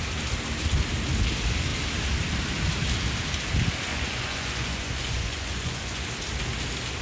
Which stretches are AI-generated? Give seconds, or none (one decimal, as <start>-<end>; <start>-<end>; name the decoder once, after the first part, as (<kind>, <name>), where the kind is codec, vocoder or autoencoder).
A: 3.9-6.1 (vocoder, Vocos)